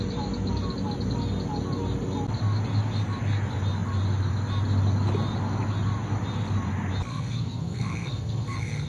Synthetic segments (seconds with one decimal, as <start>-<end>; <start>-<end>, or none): 7.1-8.9